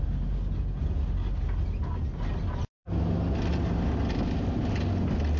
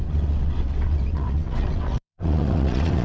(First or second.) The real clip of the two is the first